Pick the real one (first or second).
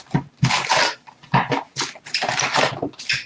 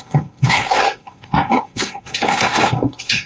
first